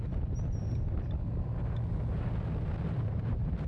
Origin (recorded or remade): recorded